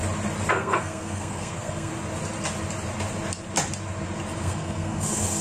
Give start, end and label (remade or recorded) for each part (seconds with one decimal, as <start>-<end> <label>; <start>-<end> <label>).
0.0-0.5 recorded; 0.5-1.9 remade; 1.9-4.4 recorded; 4.4-5.4 remade